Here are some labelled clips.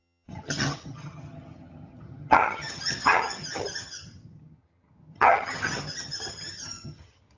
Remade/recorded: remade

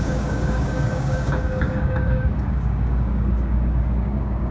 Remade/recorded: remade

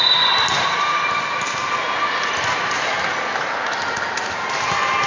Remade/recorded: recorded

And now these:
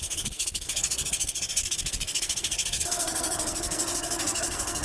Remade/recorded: remade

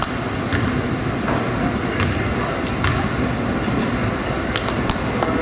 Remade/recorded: recorded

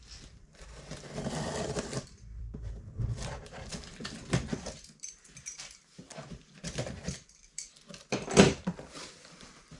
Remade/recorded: remade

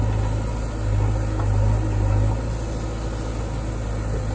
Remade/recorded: recorded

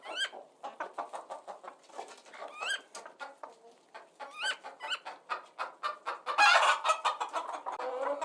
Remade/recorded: recorded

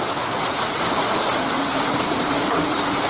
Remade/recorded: remade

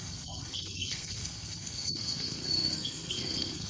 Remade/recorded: remade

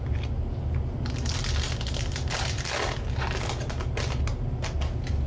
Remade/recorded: recorded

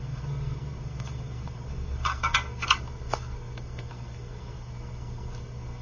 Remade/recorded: remade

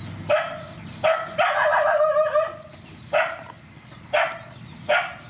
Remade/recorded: recorded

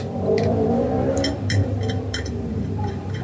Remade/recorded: remade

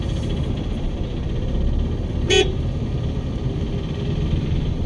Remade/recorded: recorded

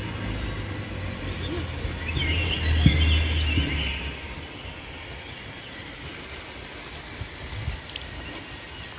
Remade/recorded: recorded